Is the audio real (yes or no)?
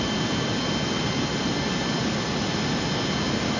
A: yes